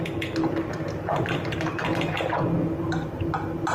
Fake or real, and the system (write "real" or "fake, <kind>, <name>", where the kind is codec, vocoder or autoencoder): real